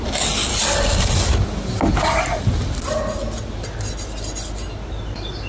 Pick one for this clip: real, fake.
real